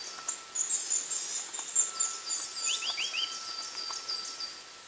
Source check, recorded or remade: recorded